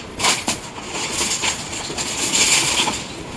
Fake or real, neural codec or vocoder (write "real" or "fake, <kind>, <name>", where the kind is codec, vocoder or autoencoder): fake, vocoder, Vocos